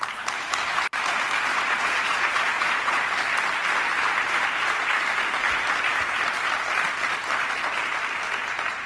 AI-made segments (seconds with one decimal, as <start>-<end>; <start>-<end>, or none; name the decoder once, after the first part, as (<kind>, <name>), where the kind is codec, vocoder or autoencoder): 1.5-3.1 (vocoder, Vocos)